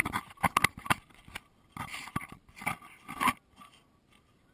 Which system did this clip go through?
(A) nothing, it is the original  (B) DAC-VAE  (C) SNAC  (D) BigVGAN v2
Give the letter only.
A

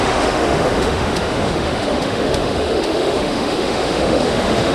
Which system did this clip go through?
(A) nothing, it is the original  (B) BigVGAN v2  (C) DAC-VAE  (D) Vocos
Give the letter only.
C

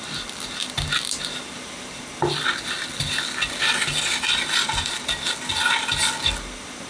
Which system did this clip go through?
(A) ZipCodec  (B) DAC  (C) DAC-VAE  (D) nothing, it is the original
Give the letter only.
D